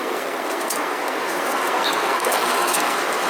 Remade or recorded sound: remade